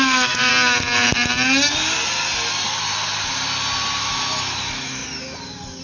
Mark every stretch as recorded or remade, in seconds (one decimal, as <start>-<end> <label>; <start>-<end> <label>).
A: 0.0-0.5 remade; 0.5-4.0 recorded; 4.0-5.0 remade; 5.0-5.8 recorded